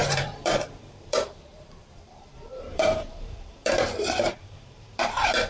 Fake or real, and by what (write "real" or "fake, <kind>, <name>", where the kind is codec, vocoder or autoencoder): fake, vocoder, BigVGAN v2